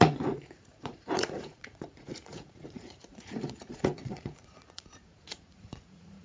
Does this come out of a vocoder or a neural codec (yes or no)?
yes